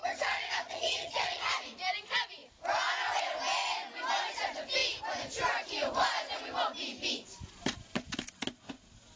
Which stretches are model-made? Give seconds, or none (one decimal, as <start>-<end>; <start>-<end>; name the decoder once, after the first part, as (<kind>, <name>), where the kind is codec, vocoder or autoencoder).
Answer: 0.0-1.5 (vocoder, HiFi-GAN)